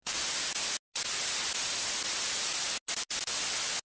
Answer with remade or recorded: recorded